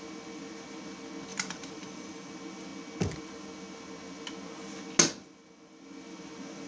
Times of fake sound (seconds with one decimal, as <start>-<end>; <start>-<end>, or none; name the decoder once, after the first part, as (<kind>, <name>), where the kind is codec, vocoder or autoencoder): 1.3-2.3 (vocoder, BigVGAN v2)